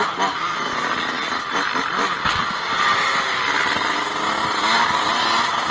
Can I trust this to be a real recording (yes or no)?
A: yes